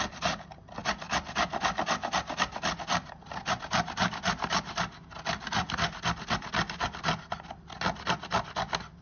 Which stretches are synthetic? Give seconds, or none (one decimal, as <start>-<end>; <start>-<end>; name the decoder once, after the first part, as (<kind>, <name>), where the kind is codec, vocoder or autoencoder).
none